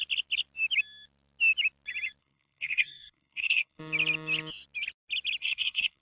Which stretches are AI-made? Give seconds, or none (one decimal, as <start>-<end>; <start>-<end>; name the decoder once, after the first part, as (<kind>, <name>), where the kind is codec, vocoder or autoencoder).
2.2-3.8 (codec, SNAC); 5.4-6.0